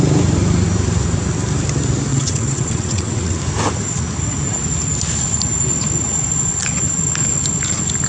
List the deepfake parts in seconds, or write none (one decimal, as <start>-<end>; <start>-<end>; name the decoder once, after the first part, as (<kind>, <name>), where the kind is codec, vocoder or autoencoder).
2.1-3.4 (vocoder, WaveNeXt)

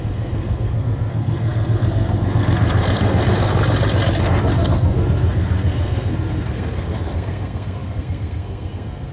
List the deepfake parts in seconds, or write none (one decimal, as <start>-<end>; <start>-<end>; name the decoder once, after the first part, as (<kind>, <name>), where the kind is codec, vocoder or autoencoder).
0.0-3.5 (codec, SNAC); 4.2-9.1

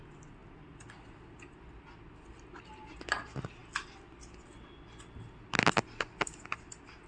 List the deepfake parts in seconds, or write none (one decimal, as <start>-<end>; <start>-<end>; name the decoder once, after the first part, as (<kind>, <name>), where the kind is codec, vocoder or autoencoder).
none